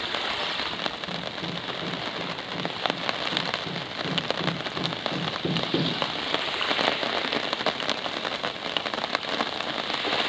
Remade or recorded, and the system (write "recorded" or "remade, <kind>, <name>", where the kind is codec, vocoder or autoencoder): recorded